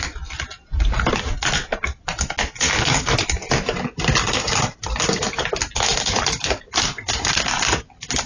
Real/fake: real